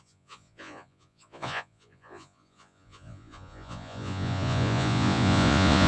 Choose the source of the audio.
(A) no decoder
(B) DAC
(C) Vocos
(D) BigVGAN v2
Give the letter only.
C